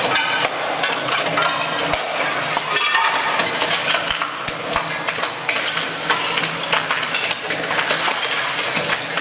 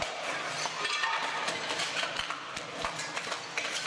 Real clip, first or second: first